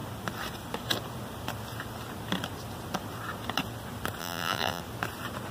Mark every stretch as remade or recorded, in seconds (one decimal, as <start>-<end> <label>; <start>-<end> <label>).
0.0-4.2 recorded; 4.2-4.8 remade; 4.8-5.5 recorded